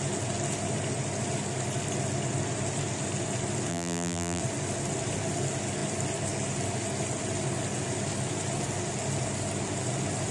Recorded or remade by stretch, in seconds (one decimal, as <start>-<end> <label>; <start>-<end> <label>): 0.0-3.7 recorded; 3.7-4.4 remade; 4.4-10.3 recorded